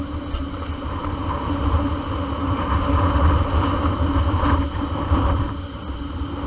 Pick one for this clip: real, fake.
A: real